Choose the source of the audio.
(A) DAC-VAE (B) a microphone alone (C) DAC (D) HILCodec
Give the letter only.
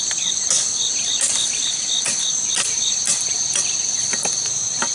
B